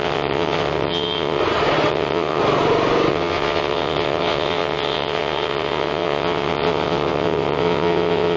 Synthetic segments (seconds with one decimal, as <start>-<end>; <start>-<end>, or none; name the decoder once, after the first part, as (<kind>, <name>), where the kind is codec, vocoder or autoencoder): 0.0-1.4 (vocoder, WaveNeXt); 1.9-2.4; 3.1-8.4